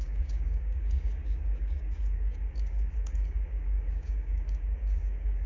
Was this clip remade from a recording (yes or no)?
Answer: yes